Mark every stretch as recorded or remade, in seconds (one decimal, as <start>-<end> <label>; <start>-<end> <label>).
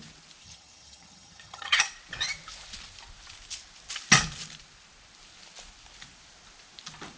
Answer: 0.0-0.4 recorded; 0.4-1.8 remade; 1.8-7.2 recorded